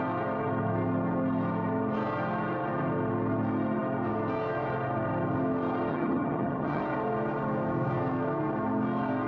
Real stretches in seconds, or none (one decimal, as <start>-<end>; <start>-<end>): 0.0-5.9; 6.8-9.3